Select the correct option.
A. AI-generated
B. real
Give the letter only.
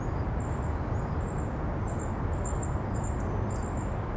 B